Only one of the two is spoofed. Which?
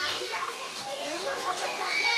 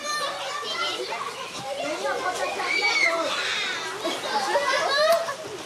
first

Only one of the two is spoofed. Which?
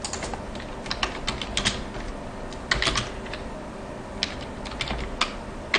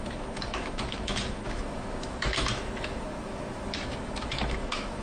second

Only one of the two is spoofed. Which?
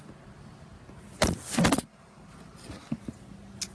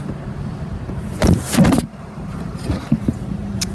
second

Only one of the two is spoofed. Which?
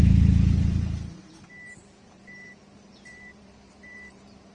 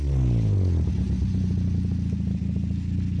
first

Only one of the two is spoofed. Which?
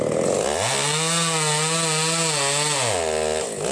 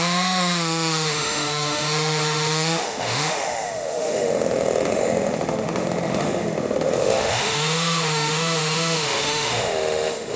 second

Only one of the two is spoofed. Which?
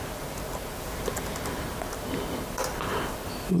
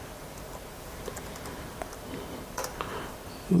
second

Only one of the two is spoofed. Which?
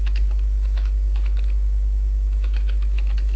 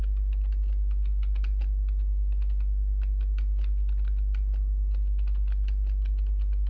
first